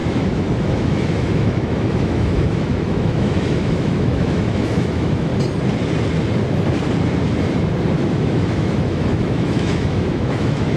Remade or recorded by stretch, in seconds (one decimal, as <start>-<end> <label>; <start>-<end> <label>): 0.0-5.3 remade; 5.3-8.0 recorded; 8.0-10.8 remade

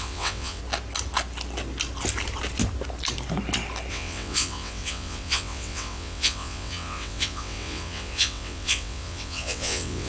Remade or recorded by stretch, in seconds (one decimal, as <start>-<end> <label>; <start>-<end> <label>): 0.0-0.6 remade; 0.6-3.9 recorded; 3.9-10.1 remade

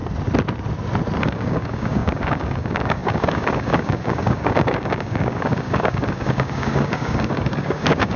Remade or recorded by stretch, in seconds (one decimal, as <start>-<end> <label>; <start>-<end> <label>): 0.0-1.2 recorded; 1.2-8.2 remade

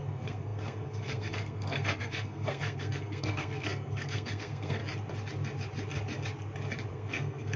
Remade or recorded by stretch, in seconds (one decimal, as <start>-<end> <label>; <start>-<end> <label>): 0.0-4.8 remade; 4.8-6.9 recorded; 6.9-7.6 remade

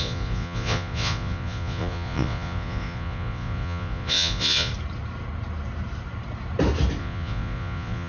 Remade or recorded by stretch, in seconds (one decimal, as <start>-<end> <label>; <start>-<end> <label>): 0.0-4.7 remade; 4.7-7.0 recorded; 7.0-8.1 remade

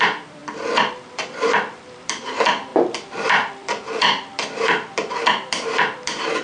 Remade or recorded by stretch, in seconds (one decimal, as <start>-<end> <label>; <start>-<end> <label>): 0.0-0.4 remade; 0.4-0.9 recorded; 0.9-6.4 remade

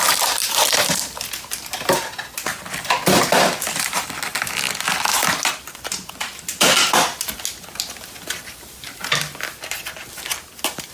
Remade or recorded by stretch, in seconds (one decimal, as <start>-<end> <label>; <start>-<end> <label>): 0.0-10.9 recorded